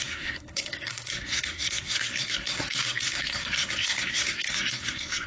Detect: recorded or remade remade